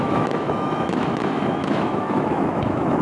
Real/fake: fake